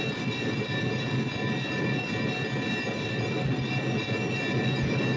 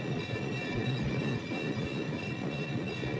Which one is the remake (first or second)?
second